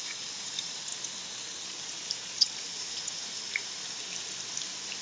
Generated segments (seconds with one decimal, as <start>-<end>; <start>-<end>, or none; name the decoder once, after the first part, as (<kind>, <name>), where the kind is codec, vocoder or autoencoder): 0.0-0.9 (vocoder, Vocos); 2.6-3.8